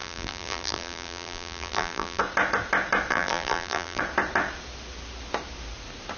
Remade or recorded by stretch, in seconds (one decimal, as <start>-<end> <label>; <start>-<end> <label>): 0.0-2.2 remade; 2.2-3.1 recorded; 3.1-4.0 remade; 4.0-6.2 recorded